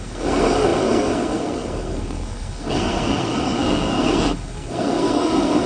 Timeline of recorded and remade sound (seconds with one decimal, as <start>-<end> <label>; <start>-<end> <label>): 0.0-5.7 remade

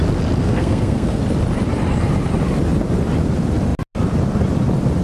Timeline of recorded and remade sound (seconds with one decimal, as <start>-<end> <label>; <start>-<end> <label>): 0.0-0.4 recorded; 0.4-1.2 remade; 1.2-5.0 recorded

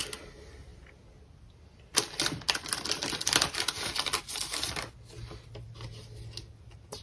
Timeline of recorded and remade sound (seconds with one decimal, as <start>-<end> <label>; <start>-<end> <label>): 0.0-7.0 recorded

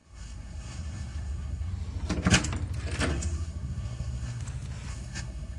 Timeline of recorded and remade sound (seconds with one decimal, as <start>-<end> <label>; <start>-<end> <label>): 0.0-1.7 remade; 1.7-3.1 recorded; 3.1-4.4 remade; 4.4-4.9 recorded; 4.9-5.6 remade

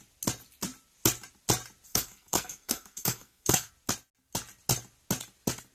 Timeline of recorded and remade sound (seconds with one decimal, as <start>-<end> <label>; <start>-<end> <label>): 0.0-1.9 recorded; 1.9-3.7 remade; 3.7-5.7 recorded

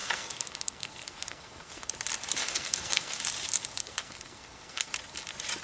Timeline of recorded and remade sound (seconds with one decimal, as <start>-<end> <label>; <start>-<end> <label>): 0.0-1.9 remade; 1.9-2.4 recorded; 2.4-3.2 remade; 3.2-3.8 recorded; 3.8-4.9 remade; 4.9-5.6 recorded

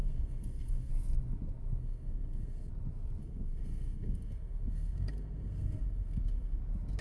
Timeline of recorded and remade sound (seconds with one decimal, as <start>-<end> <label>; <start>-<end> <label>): 0.0-0.9 remade; 0.9-1.8 recorded; 1.8-2.7 remade; 2.7-3.2 recorded; 3.2-6.6 remade; 6.6-7.0 recorded

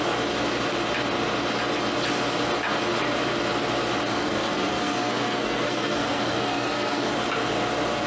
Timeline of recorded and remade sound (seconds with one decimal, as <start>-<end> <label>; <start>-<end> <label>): 0.0-4.1 recorded; 4.1-7.1 remade; 7.1-8.1 recorded